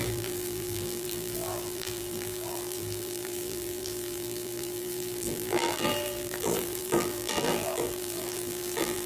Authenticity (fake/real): fake